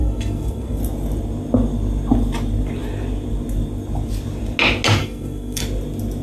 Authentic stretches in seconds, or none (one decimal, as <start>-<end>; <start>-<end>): 0.8-5.0; 5.6-6.2